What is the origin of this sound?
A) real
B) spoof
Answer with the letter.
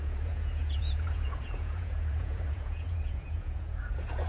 B